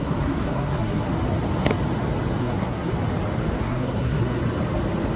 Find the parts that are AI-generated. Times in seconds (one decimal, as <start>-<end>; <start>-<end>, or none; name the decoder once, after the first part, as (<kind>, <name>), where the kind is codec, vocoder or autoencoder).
0.0-1.1 (codec, SNAC); 2.4-2.9; 3.6-4.4